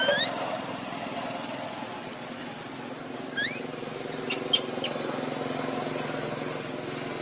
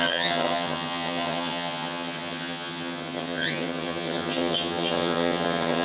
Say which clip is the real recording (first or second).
first